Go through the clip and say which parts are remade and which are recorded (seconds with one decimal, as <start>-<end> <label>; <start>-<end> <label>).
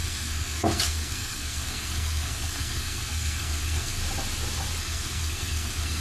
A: 0.0-4.0 remade; 4.0-4.8 recorded; 4.8-6.0 remade